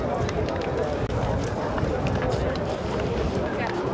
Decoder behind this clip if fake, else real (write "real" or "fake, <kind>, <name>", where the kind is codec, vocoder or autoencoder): real